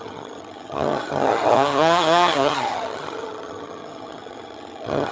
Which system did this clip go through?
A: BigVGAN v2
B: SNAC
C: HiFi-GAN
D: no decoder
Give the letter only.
C